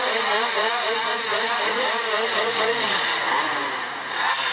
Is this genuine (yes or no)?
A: no